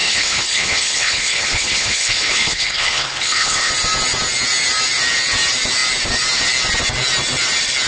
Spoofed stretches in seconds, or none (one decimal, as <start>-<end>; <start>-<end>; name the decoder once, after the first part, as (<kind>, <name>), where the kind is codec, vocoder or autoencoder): 0.0-3.7 (codec, HILCodec)